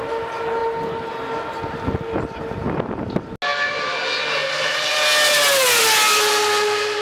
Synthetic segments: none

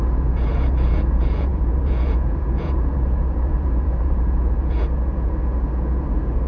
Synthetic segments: 0.0-6.5 (vocoder, Vocos)

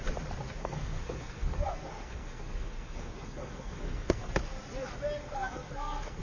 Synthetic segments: 0.6-4.3 (codec, SNAC); 5.2-6.2